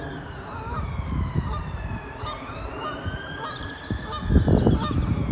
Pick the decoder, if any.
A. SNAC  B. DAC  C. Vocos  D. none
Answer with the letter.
D